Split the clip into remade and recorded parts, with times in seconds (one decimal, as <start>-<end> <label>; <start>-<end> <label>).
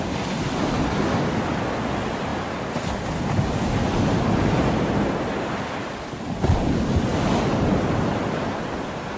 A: 0.0-9.2 recorded